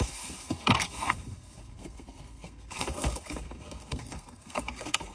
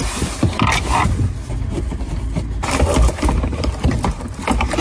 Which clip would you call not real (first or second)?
first